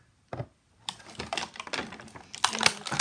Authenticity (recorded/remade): recorded